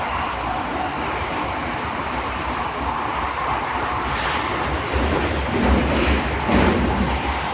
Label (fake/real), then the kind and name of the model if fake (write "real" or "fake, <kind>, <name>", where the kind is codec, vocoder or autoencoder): real